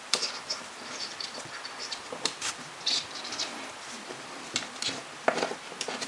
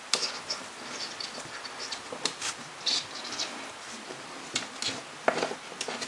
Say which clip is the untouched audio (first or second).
second